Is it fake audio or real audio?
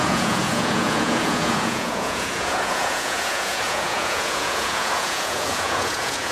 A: fake